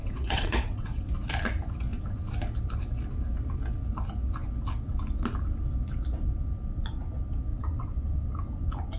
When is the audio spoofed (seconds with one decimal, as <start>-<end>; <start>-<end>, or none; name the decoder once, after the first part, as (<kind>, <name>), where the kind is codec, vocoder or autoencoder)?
0.0-1.1 (vocoder, WaveNeXt); 7.5-8.3